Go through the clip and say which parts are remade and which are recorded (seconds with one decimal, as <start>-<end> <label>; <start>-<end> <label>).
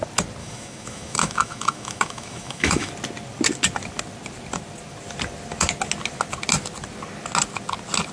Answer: 0.0-0.4 recorded; 0.4-2.9 remade; 2.9-8.1 recorded